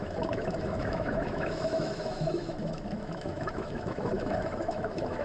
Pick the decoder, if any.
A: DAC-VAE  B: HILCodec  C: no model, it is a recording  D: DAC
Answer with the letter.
A